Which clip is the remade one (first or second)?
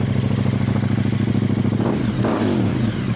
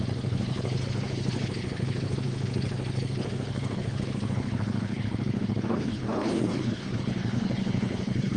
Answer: second